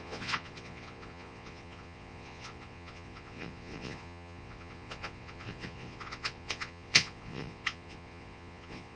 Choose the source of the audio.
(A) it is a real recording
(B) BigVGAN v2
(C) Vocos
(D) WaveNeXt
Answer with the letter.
C